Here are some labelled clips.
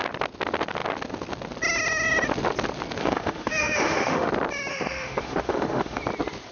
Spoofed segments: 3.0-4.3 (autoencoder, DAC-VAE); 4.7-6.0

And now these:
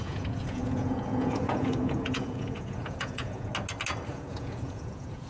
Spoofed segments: 0.0-3.5 (vocoder, Vocos); 4.1-5.3

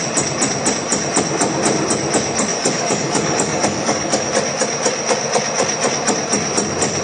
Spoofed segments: 2.5-4.3 (codec, DAC)